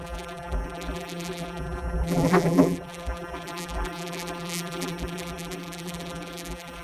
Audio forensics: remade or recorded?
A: remade